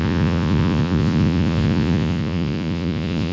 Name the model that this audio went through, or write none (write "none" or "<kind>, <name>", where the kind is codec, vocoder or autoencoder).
vocoder, Vocos